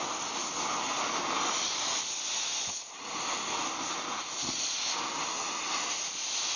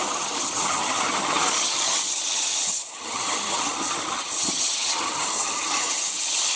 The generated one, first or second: second